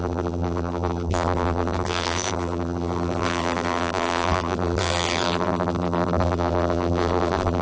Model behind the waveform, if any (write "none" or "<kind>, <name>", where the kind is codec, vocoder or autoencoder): vocoder, BigVGAN v2